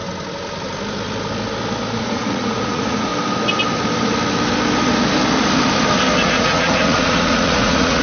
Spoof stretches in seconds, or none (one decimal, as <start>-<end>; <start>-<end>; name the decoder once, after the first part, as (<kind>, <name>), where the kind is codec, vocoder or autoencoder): 2.0-3.1 (vocoder, Vocos); 6.2-8.0